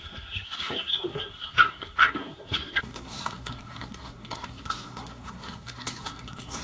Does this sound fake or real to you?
fake